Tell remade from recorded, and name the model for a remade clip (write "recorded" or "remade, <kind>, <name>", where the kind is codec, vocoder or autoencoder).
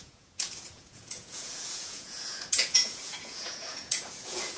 remade, vocoder, Vocos